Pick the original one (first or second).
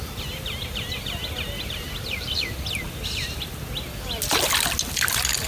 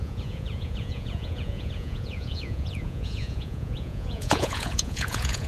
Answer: first